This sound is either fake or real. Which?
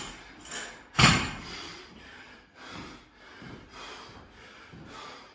fake